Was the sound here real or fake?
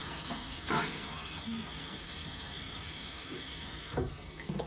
fake